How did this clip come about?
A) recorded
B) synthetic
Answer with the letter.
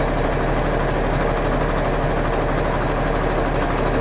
A